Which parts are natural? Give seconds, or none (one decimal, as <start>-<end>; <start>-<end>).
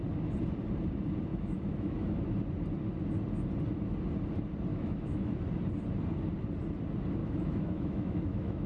0.0-1.3; 2.2-4.7; 5.4-7.2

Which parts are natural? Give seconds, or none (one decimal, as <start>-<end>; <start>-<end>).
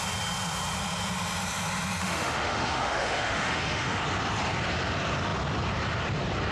0.0-2.0; 4.0-6.5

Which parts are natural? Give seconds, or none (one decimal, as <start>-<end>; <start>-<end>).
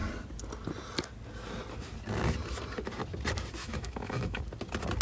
0.0-3.6; 4.4-5.0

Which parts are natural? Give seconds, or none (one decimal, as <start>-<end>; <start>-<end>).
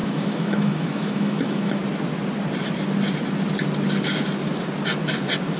1.8-5.6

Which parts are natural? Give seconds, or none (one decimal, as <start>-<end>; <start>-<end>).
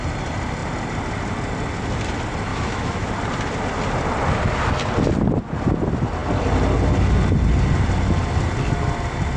0.0-2.5; 3.1-9.4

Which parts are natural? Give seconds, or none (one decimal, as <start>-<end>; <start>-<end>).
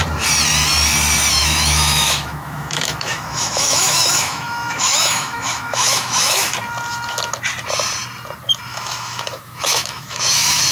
0.0-1.4; 6.5-8.7